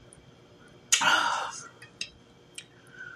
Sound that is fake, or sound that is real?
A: real